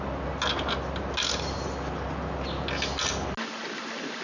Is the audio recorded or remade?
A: recorded